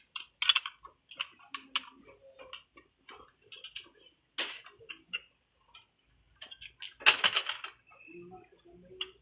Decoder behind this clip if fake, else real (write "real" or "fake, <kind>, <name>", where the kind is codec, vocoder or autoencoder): real